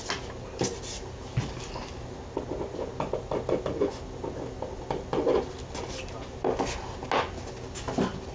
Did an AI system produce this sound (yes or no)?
no